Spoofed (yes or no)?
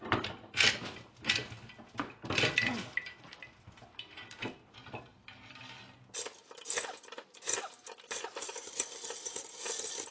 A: no